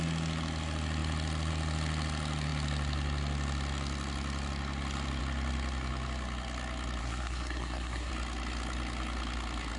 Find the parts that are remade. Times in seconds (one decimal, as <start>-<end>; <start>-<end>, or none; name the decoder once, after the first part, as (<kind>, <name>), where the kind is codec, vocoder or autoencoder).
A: 7.0-8.1 (codec, SNAC)